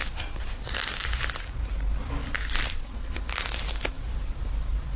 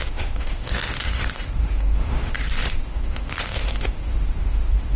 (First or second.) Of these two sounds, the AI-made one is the second